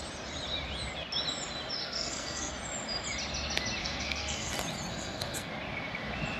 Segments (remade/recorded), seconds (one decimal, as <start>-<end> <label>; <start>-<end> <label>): 0.0-1.8 recorded; 1.8-2.5 remade; 2.5-3.8 recorded; 3.8-4.5 remade; 4.5-4.9 recorded; 4.9-5.5 remade; 5.5-6.4 recorded